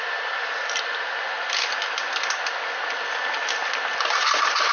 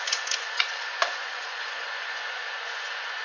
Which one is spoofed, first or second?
second